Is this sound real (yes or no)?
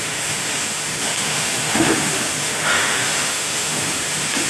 no